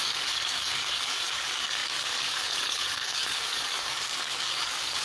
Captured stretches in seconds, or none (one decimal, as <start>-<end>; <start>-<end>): none